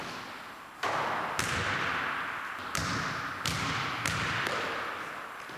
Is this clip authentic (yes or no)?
yes